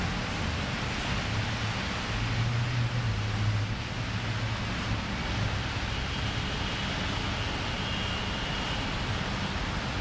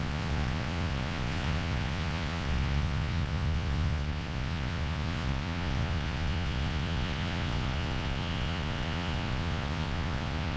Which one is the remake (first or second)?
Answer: second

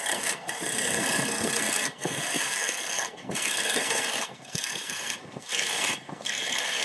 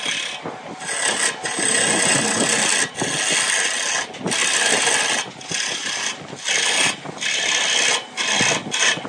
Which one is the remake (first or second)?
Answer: first